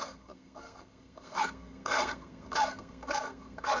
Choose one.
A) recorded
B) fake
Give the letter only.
B